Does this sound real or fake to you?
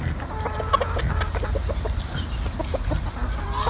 real